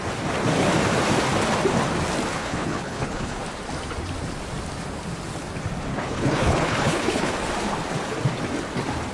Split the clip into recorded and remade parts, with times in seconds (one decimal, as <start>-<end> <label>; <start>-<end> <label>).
0.0-2.3 recorded; 2.3-3.4 remade; 3.4-5.9 recorded; 5.9-7.3 remade; 7.3-9.1 recorded